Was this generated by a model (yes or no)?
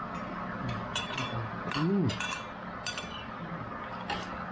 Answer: no